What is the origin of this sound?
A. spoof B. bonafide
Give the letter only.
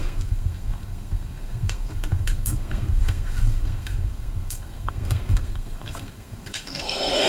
A